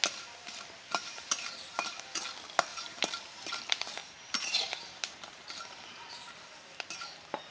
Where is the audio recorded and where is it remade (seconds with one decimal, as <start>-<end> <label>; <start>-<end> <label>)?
0.0-1.0 recorded; 1.0-2.0 remade; 2.0-2.7 recorded; 2.7-6.1 remade; 6.1-7.5 recorded